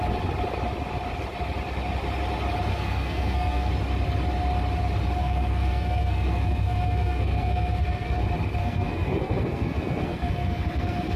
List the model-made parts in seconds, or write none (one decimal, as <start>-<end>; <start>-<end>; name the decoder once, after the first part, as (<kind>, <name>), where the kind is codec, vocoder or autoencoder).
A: 2.7-3.7 (codec, SNAC); 5.2-8.2; 8.6-11.2